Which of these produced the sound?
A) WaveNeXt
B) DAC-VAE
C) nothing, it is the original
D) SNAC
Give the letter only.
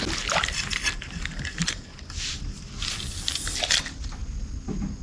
C